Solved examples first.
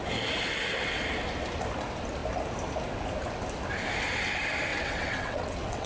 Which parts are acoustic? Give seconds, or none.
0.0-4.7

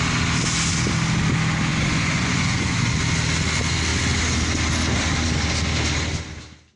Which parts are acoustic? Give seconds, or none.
0.0-1.7; 2.9-6.8

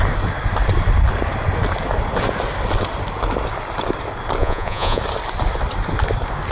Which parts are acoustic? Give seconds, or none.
0.0-4.4; 5.0-6.5

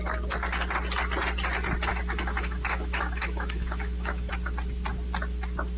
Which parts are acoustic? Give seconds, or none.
0.0-1.9; 4.3-5.8

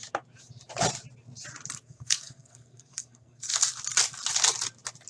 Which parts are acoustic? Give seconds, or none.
0.0-1.8; 3.6-5.1